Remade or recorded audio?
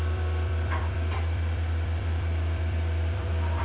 remade